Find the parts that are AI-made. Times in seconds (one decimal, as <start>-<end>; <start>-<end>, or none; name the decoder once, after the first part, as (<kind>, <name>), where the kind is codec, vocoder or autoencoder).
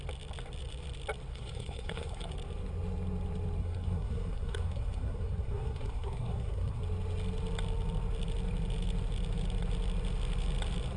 1.3-2.3 (codec, SNAC); 3.6-6.8